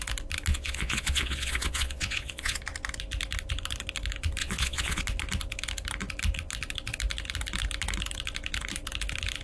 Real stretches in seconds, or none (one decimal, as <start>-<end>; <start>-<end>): 0.0-0.5; 2.6-4.4; 5.0-9.4